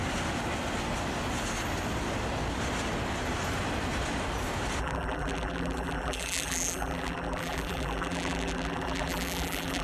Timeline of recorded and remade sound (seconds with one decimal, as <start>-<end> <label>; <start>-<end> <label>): 0.0-4.8 recorded; 4.8-9.8 remade